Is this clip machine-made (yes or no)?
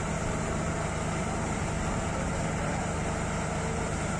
no